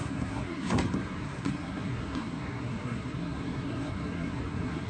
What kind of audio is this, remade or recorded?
remade